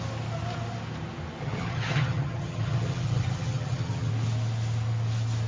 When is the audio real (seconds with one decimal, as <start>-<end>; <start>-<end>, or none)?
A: 0.0-1.4; 4.1-5.5